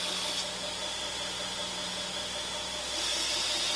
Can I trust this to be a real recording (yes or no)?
yes